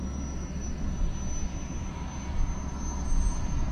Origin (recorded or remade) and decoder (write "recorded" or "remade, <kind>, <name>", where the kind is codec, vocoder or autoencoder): recorded